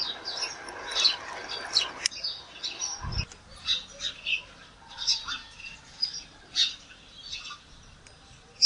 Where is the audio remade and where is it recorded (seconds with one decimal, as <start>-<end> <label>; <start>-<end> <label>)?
0.0-8.7 recorded